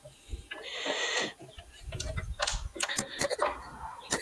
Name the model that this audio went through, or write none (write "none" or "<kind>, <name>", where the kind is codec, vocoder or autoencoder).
none